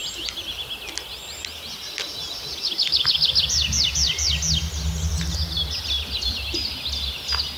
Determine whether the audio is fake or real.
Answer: real